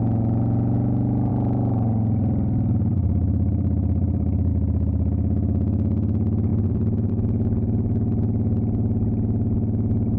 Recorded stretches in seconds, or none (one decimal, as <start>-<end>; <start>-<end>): 0.0-1.3; 4.5-6.5; 7.1-10.2